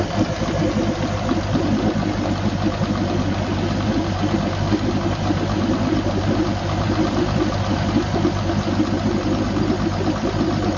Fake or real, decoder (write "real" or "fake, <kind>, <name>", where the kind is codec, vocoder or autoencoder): real